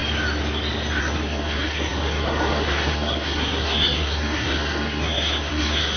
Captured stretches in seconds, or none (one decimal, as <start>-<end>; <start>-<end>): 0.0-1.0